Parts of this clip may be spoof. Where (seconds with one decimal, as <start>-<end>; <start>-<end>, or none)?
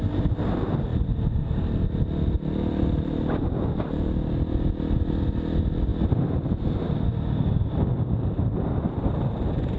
none